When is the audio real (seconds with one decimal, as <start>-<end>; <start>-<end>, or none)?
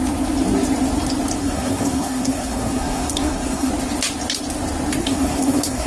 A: 0.0-1.4; 3.7-5.0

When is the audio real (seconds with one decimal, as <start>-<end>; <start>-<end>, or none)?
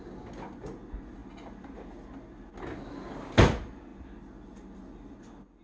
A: 0.0-5.6